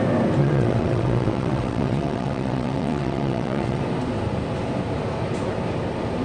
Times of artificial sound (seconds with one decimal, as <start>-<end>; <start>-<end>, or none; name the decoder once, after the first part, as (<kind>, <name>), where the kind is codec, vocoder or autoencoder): 0.4-3.8 (vocoder, WaveNeXt)